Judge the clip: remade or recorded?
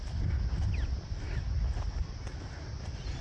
recorded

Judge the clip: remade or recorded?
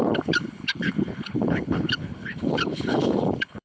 remade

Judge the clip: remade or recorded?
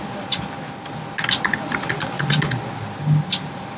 recorded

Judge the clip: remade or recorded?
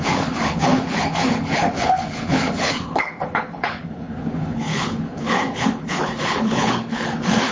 remade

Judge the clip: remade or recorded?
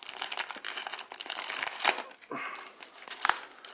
recorded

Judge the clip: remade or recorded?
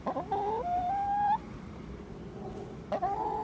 recorded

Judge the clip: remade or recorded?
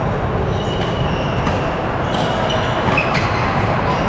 recorded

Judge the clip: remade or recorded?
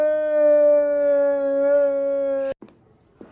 recorded